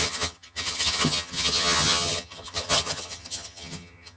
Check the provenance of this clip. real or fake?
fake